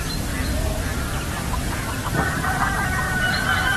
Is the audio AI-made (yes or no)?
yes